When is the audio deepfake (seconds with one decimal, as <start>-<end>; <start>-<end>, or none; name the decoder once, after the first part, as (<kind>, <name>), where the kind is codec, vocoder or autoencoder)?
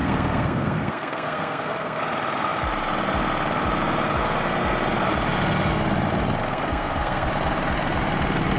0.0-2.0 (codec, SNAC); 6.4-7.3